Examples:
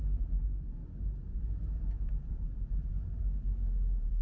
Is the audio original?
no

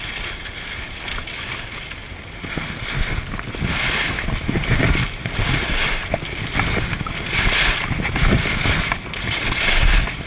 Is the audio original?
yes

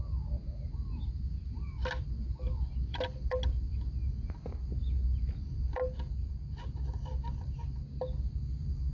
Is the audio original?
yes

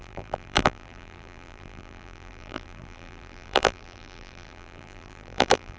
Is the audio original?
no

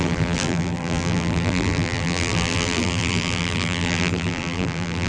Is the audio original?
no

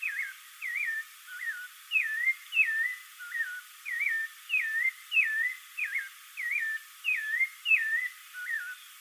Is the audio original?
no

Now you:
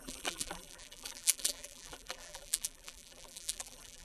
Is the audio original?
no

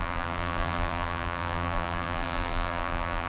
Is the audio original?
no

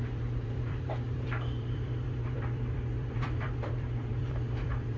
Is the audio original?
no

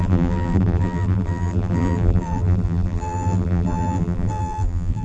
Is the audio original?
no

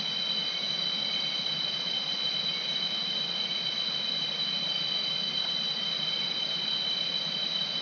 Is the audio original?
yes